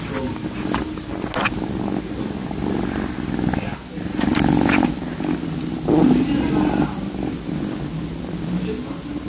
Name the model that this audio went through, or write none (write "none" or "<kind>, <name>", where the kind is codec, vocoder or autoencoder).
none